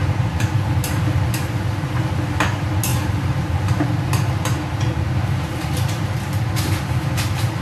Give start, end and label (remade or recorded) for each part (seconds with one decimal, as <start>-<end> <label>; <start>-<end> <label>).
0.0-1.2 remade; 1.2-2.9 recorded; 2.9-7.6 remade